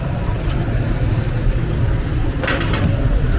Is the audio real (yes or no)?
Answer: yes